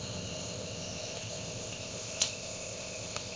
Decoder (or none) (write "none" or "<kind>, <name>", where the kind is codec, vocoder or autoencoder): codec, ZipCodec